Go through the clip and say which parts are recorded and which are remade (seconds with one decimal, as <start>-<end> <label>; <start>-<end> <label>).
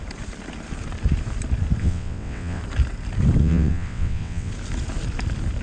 0.0-1.8 recorded; 1.8-2.6 remade; 2.6-3.4 recorded; 3.4-4.5 remade; 4.5-5.6 recorded